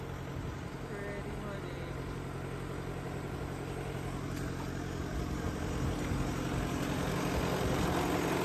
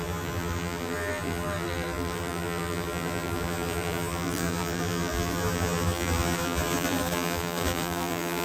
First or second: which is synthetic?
second